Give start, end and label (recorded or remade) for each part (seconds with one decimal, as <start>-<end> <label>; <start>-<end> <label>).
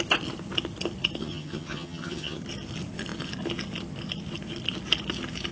0.0-1.2 recorded; 1.2-2.4 remade; 2.4-5.5 recorded